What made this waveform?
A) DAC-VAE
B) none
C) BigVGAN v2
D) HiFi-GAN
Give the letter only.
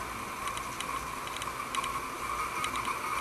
B